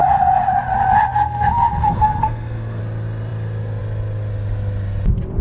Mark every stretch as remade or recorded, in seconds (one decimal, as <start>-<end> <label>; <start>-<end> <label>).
0.0-1.1 recorded; 1.1-2.8 remade; 2.8-5.4 recorded